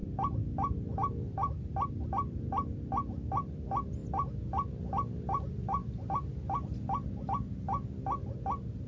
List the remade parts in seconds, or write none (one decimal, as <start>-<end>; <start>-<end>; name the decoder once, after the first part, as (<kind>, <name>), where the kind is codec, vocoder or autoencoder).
none